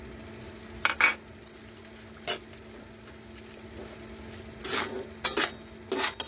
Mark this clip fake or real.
real